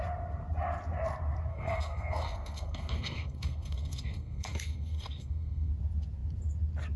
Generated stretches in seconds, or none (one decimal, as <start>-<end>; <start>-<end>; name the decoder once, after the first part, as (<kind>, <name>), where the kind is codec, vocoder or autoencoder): 1.5-5.7 (codec, SNAC)